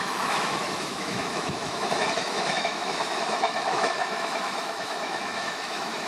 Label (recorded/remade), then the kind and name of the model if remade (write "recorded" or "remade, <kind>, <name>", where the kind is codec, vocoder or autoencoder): remade, autoencoder, DAC-VAE